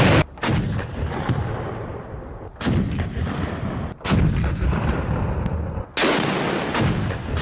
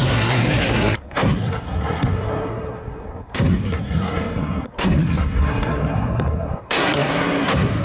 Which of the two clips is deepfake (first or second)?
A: second